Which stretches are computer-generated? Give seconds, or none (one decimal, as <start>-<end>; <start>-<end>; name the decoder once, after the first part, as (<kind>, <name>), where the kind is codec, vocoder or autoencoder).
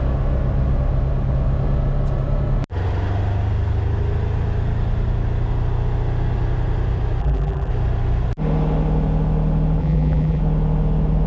7.2-7.7 (vocoder, BigVGAN v2); 9.8-10.4